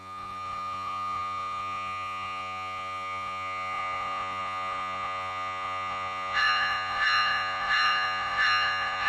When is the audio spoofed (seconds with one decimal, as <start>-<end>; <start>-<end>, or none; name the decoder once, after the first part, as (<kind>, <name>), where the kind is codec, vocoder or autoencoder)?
0.0-9.1 (vocoder, Vocos)